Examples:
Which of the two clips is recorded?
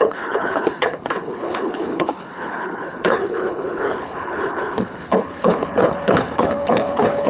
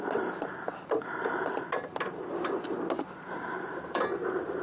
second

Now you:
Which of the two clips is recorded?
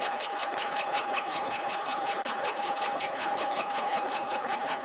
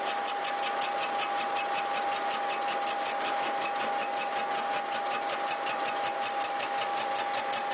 second